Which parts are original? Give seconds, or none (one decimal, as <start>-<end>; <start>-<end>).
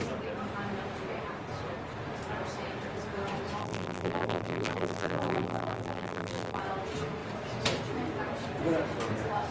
0.0-3.6; 6.6-9.5